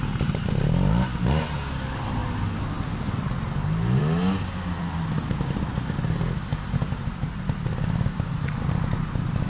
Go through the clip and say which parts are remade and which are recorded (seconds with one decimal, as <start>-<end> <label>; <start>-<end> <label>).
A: 0.0-9.5 recorded